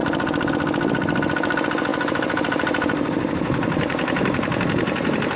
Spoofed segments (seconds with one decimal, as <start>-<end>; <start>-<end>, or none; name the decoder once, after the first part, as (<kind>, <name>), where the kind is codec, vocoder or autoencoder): 0.0-0.5 (vocoder, BigVGAN v2); 1.9-5.4